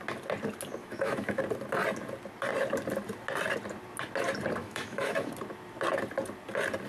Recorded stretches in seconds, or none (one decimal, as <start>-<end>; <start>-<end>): 0.0-0.8; 1.4-4.6; 5.3-6.9

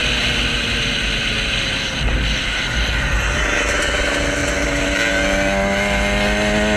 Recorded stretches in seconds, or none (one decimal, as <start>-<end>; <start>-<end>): 0.0-6.8

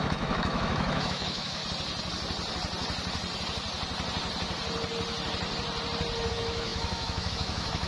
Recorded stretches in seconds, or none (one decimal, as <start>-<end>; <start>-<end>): 1.6-6.3

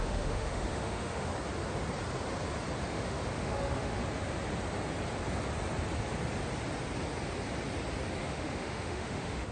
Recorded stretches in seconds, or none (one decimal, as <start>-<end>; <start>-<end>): 1.3-2.9; 4.0-8.2